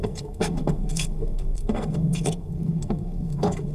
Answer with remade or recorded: remade